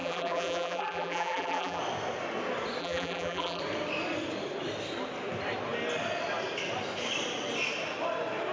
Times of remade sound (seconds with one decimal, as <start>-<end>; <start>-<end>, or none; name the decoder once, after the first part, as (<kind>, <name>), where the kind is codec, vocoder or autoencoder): 0.0-1.8 (vocoder, BigVGAN v2); 2.8-3.6